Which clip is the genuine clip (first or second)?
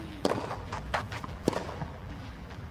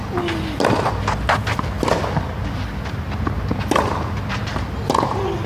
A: second